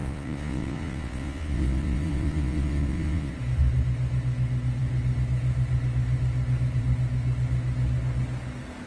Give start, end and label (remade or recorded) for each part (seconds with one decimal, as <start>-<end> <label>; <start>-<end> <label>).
0.0-3.3 remade; 3.3-8.9 recorded